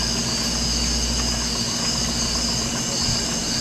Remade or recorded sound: recorded